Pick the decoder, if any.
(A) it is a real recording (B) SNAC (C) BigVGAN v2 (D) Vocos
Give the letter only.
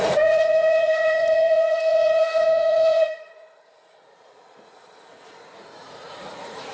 D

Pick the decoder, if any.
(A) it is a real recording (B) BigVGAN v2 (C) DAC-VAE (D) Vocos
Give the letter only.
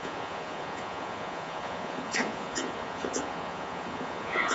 D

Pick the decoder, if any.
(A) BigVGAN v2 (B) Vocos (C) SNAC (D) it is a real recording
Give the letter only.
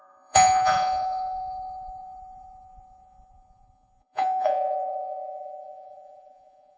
B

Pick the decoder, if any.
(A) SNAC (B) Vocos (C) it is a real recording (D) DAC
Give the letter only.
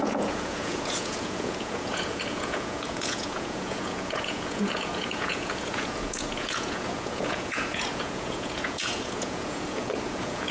B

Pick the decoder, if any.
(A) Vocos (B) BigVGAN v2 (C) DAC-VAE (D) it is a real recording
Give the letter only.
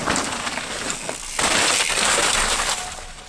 D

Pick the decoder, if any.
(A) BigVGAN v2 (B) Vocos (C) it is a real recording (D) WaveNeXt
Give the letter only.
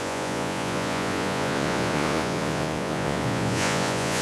B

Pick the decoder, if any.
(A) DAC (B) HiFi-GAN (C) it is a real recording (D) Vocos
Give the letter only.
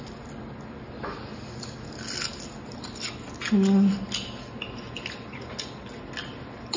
C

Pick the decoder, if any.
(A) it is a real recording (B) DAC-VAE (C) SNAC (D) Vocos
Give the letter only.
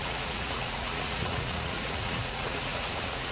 D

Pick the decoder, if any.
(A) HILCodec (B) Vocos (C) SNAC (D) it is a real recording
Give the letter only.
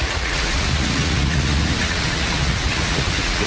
B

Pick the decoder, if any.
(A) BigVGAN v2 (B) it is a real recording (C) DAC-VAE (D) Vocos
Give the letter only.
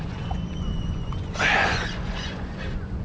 D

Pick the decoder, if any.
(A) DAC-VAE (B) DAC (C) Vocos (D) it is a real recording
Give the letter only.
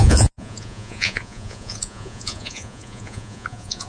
C